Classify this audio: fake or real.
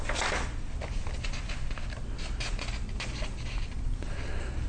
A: real